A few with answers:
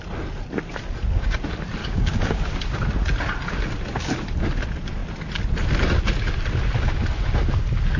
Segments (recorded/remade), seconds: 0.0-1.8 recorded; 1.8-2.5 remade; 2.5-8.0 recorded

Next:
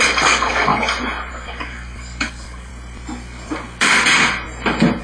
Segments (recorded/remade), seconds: 0.0-0.7 remade; 0.7-1.3 recorded; 1.3-2.7 remade; 2.7-5.0 recorded

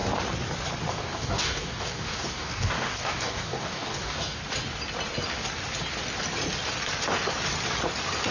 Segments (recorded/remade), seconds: 0.0-0.9 recorded; 0.9-4.4 remade; 4.4-8.3 recorded

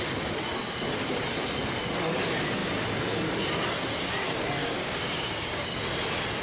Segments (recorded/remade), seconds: 0.0-4.6 recorded; 4.6-5.8 remade; 5.8-6.4 recorded

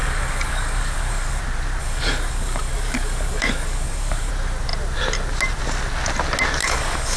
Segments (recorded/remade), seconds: 0.0-1.4 remade; 1.4-1.8 recorded; 1.8-4.3 remade; 4.3-6.6 recorded; 6.6-7.2 remade

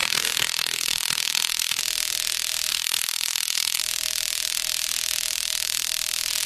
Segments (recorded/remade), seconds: 0.0-1.8 remade; 1.8-2.7 recorded; 2.7-3.8 remade; 3.8-6.5 recorded

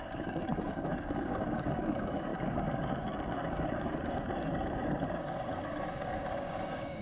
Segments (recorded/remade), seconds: 0.0-7.0 remade

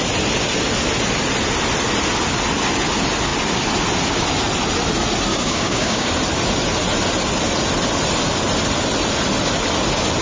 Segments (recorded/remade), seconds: 0.0-5.3 recorded; 5.3-6.1 remade; 6.1-10.2 recorded